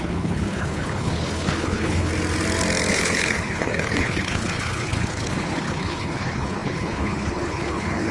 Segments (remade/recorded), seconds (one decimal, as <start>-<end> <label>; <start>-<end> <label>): 0.0-2.1 remade; 2.1-2.9 recorded; 2.9-8.1 remade